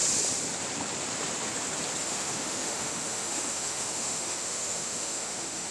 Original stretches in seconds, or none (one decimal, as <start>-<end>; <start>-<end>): 0.0-2.0